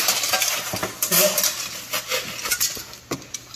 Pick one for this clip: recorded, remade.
recorded